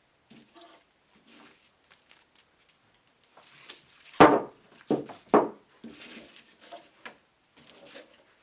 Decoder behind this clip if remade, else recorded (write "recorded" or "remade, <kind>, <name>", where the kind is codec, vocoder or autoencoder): recorded